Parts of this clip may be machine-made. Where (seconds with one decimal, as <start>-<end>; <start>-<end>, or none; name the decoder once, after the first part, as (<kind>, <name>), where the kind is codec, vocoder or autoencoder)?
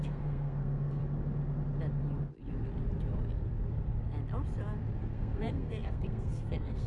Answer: 0.0-1.0 (codec, SNAC); 5.0-6.9